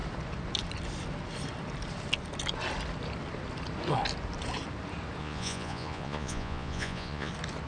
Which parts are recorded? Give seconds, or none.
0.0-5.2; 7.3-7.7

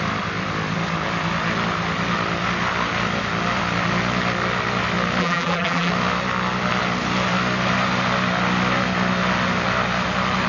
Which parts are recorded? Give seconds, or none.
0.0-5.2; 5.9-10.5

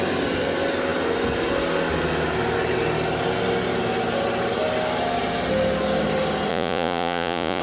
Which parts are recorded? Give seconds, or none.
0.0-6.5